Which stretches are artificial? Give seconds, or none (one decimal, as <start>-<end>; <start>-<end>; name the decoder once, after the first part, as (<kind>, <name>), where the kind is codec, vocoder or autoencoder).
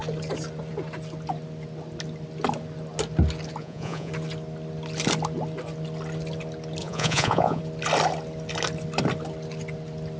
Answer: 3.6-4.1 (vocoder, Vocos); 6.8-7.6